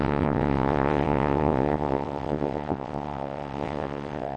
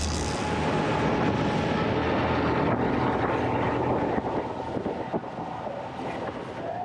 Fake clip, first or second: first